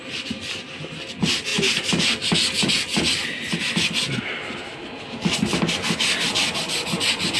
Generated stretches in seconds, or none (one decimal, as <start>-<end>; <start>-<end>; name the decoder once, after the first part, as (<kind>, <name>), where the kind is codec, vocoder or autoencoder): none